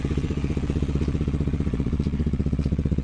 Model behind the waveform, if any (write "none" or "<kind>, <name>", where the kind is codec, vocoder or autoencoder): vocoder, Vocos